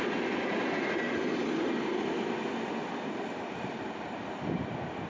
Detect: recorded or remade recorded